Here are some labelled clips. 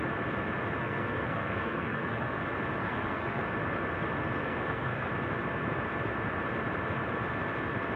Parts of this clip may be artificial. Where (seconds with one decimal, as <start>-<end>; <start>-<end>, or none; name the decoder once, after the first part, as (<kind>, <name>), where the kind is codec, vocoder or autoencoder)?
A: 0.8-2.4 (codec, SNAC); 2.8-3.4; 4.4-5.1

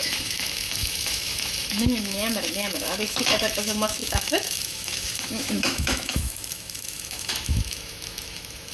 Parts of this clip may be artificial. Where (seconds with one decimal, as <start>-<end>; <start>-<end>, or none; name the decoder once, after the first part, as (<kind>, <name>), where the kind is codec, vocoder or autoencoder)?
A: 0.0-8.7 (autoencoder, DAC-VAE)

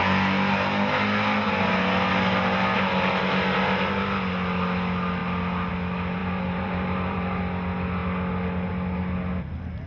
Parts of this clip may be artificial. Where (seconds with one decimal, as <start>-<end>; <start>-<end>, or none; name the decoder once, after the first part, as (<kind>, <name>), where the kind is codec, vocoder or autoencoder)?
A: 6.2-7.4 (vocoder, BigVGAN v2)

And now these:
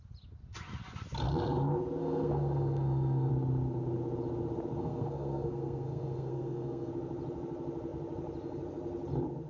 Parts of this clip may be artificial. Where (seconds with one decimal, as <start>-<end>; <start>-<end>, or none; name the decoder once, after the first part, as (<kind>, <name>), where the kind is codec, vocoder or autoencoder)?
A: 2.0-3.3 (codec, SNAC); 4.8-6.9

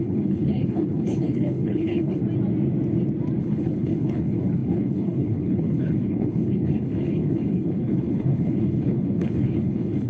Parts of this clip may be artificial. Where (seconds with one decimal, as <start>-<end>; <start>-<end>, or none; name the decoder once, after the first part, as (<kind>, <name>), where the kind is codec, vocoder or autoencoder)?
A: 0.0-2.2 (codec, HILCodec); 3.4-10.1

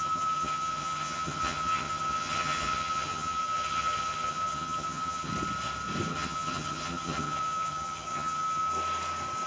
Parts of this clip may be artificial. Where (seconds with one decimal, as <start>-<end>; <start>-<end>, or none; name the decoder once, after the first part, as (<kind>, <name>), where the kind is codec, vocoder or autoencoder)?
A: 0.0-5.3 (vocoder, HiFi-GAN); 6.1-8.7

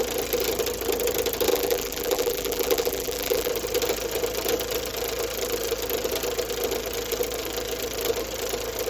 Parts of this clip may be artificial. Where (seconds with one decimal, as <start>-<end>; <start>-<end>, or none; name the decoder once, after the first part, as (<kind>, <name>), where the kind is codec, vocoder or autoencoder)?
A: 1.5-3.5 (vocoder, BigVGAN v2)